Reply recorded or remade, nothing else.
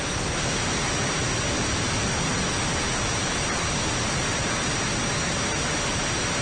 recorded